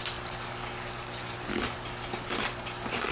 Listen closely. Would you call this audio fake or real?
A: real